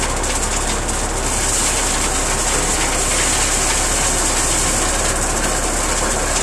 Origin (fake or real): real